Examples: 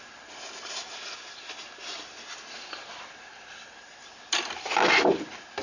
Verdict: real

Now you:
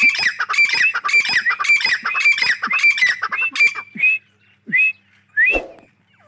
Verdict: real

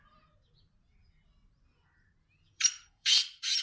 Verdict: fake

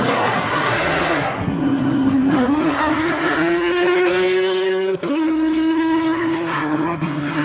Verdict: fake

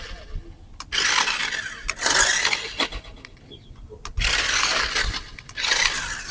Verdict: real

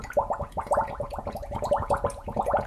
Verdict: fake